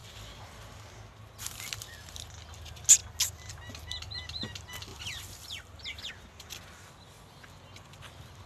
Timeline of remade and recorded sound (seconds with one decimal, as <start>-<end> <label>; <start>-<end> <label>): 0.0-0.9 remade; 0.9-4.9 recorded; 4.9-6.1 remade; 6.1-8.5 recorded